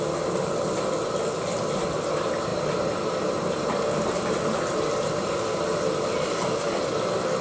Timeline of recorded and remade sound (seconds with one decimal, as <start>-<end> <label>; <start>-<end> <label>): 0.0-2.5 recorded; 2.5-5.6 remade; 5.6-7.4 recorded